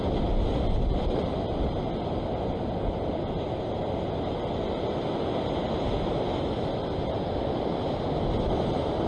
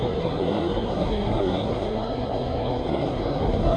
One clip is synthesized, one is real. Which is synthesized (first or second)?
second